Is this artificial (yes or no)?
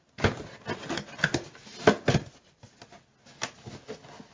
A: no